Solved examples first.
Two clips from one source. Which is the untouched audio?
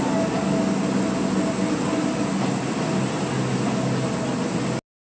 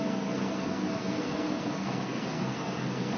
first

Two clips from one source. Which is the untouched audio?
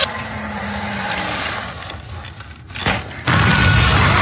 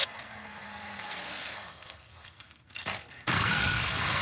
first